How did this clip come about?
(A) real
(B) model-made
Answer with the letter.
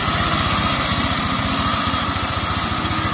A